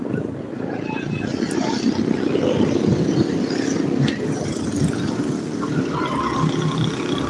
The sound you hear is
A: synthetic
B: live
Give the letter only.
B